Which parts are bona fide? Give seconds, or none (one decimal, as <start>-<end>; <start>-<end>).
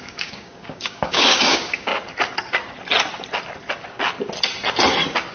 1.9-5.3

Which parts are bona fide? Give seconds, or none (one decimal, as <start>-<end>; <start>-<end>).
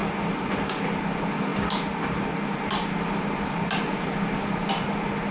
0.0-5.3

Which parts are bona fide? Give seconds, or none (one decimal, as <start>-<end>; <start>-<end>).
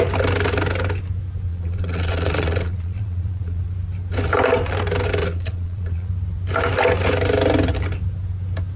0.0-1.5; 3.6-5.2; 6.1-8.8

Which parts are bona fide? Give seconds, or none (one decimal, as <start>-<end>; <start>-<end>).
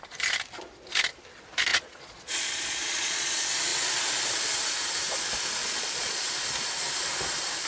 0.0-1.7; 3.3-5.6; 6.3-7.7